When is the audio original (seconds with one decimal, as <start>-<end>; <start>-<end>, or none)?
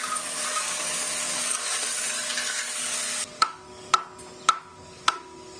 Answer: 0.0-0.5; 3.9-4.7